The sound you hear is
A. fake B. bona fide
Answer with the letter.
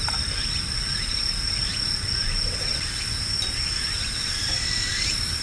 B